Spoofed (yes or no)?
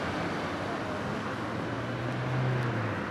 no